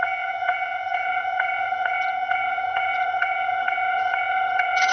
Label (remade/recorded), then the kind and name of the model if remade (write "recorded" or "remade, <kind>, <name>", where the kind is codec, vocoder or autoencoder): remade, vocoder, HiFi-GAN